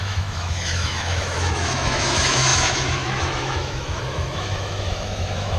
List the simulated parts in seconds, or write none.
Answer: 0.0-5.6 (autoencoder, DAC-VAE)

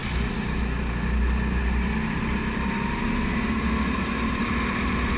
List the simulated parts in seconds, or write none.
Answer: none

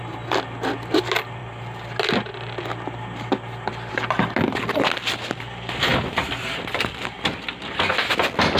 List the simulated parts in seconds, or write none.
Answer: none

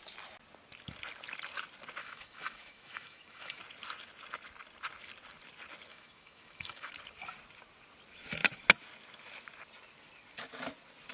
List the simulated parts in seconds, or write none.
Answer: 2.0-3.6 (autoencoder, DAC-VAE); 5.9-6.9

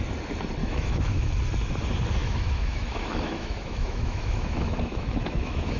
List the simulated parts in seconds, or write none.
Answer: 0.6-1.3 (autoencoder, DAC-VAE); 2.2-5.8

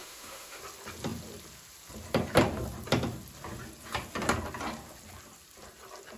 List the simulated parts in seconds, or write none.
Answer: 0.0-0.6 (autoencoder, DAC-VAE)

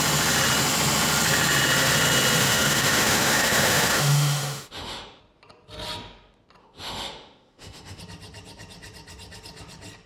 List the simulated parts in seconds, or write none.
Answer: 2.4-5.2 (autoencoder, DAC-VAE); 6.6-8.0